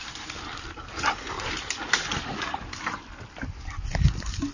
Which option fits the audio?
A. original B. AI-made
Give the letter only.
A